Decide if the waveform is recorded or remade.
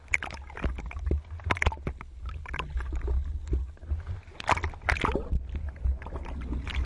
recorded